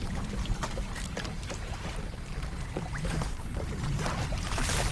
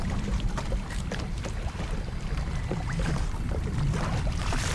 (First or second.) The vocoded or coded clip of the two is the second